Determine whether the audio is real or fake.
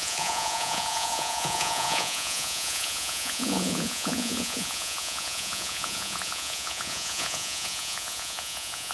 fake